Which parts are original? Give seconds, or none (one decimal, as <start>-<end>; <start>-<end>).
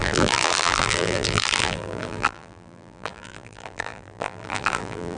none